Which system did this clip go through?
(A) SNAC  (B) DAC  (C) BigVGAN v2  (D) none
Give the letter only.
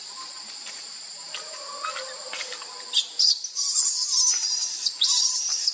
C